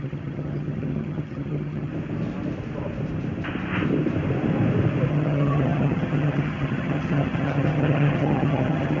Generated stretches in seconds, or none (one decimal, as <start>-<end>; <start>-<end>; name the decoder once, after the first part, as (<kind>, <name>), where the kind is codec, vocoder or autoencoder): 0.0-1.9 (vocoder, HiFi-GAN); 5.1-9.0

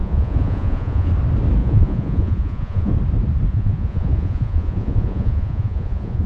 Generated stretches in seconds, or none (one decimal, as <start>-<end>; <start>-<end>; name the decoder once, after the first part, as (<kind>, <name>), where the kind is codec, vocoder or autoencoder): 0.0-1.1 (vocoder, Vocos); 1.6-2.9; 3.5-6.3

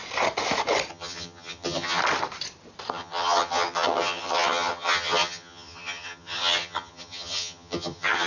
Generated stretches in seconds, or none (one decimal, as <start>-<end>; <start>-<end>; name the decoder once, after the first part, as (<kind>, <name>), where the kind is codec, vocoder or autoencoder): 0.9-2.0 (vocoder, HiFi-GAN); 2.9-8.3

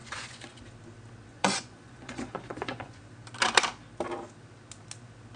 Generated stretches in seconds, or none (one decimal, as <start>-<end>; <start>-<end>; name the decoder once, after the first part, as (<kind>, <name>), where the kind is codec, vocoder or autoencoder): 0.0-0.6 (vocoder, Vocos); 1.3-3.0

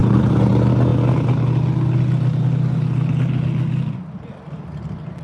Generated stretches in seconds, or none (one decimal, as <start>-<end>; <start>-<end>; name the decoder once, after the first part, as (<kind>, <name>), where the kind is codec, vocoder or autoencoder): 0.0-0.5 (vocoder, BigVGAN v2)

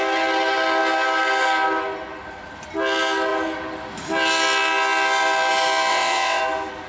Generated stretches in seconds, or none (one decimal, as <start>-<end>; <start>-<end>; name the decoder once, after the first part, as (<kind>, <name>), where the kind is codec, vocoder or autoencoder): 5.9-6.4 (vocoder, WaveNeXt)

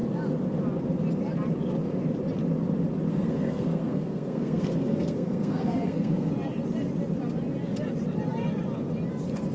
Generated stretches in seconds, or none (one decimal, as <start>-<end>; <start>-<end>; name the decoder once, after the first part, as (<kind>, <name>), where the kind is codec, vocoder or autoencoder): 3.1-6.3 (codec, SNAC)

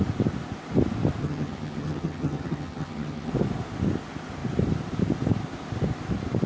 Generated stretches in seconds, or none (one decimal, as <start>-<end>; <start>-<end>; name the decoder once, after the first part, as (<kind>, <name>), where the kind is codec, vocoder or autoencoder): 1.2-3.3 (vocoder, HiFi-GAN)